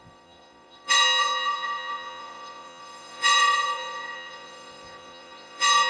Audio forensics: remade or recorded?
remade